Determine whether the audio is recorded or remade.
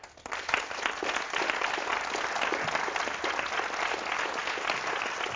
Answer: recorded